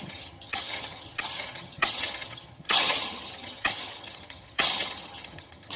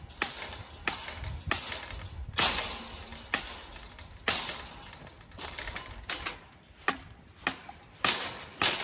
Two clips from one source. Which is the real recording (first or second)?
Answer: second